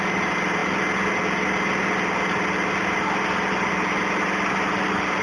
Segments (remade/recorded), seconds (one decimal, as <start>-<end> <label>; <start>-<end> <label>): 0.0-5.2 recorded